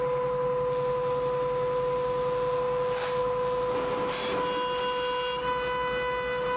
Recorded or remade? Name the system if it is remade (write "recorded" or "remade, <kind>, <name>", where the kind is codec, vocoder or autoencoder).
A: recorded